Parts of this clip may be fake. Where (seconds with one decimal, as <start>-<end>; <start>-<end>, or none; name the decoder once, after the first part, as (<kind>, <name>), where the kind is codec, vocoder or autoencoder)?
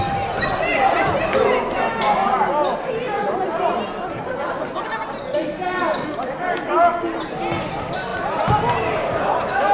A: none